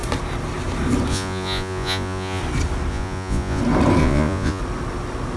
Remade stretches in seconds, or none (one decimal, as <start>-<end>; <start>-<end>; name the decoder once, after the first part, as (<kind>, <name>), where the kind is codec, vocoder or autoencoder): 1.1-2.4 (vocoder, Vocos); 2.9-3.6; 4.0-4.6